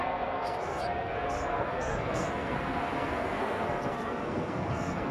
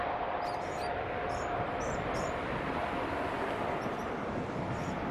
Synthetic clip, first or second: first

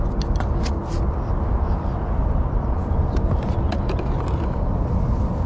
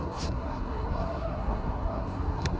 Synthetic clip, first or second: second